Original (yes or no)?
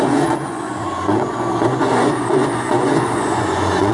no